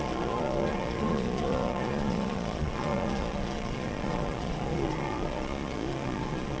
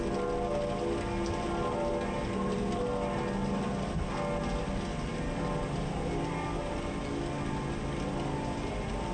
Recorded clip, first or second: second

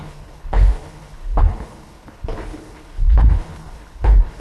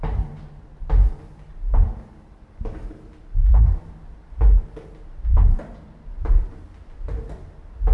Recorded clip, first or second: second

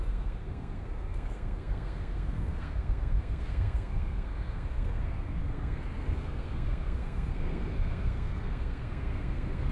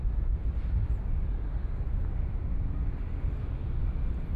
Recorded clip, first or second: second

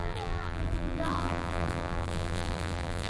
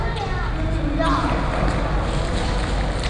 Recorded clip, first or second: second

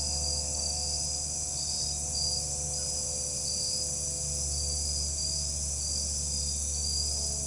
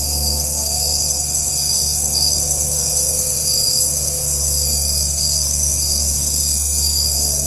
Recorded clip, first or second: first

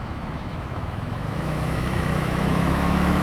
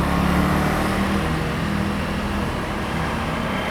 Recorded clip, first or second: second